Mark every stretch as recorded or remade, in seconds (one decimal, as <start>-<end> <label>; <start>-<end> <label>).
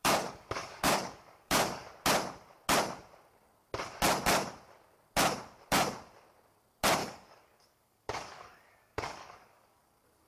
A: 0.0-1.9 remade; 1.9-7.0 recorded; 7.0-9.8 remade; 9.8-10.3 recorded